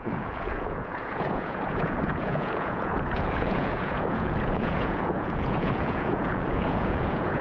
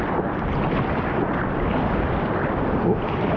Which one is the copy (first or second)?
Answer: first